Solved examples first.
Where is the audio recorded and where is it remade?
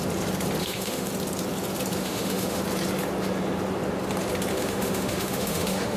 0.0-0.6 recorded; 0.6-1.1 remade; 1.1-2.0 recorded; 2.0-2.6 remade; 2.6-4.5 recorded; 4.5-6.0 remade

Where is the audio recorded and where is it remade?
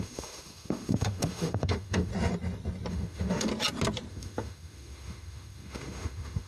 0.0-2.1 remade; 2.1-2.9 recorded; 2.9-3.5 remade; 3.5-4.1 recorded; 4.1-6.5 remade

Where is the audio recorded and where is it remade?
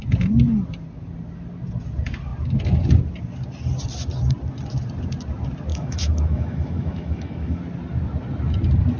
0.0-5.7 recorded; 5.7-7.6 remade; 7.6-9.0 recorded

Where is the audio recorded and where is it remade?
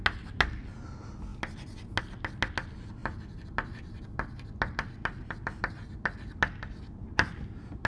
0.0-7.9 recorded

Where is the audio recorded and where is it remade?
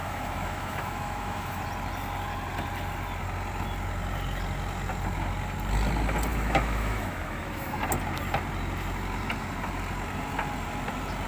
0.0-1.6 remade; 1.6-6.3 recorded; 6.3-7.8 remade; 7.8-11.3 recorded